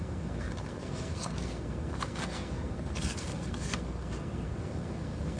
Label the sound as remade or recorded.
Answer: remade